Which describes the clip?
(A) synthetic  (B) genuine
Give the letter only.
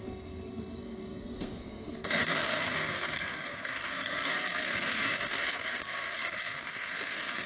A